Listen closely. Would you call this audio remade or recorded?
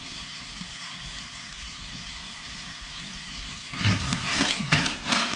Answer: remade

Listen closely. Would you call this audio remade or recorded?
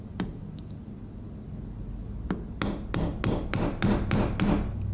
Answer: recorded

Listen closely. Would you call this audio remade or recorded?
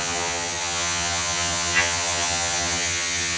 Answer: remade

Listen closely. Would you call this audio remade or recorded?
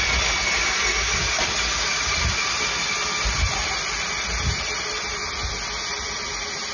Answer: recorded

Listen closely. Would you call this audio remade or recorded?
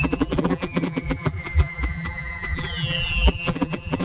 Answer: remade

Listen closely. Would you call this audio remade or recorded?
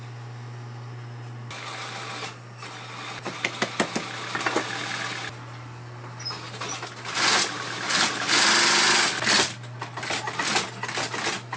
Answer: recorded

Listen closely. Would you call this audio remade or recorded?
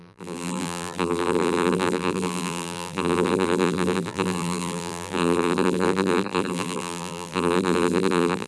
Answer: remade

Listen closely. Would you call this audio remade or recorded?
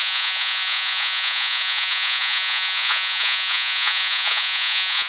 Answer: remade